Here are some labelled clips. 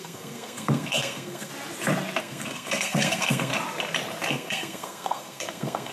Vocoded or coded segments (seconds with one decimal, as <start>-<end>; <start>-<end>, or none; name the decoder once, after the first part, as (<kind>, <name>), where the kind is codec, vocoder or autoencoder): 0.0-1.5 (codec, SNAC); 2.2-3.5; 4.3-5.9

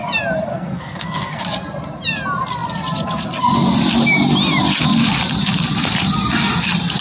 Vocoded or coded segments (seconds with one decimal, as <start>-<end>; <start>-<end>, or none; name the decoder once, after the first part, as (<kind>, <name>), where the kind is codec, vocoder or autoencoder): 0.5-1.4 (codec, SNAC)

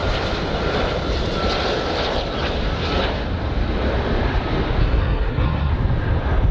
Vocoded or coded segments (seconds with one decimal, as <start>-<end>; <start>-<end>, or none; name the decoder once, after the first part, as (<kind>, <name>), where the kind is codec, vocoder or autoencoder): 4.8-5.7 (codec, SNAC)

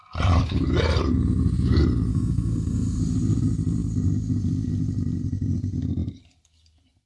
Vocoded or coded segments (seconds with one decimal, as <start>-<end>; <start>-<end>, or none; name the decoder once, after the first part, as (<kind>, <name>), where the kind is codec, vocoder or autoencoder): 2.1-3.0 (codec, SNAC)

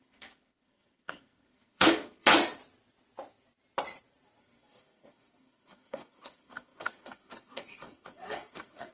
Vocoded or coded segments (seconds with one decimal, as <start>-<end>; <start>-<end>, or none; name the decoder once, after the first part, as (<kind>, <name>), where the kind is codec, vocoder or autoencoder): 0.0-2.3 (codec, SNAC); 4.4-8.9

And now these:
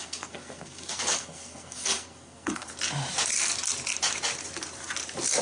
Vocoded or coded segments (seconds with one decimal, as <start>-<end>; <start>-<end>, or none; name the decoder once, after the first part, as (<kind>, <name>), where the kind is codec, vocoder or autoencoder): 0.0-2.7 (codec, SNAC)

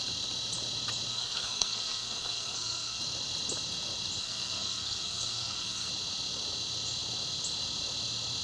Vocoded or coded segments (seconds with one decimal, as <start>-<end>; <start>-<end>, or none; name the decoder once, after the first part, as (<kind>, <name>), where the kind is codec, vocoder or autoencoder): 1.1-3.0 (codec, SNAC); 4.2-5.9